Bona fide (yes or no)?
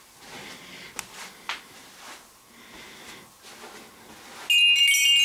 yes